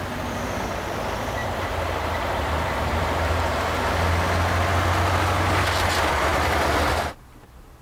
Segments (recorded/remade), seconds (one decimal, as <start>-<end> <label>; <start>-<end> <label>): 0.0-1.4 recorded; 1.4-3.8 remade; 3.8-7.8 recorded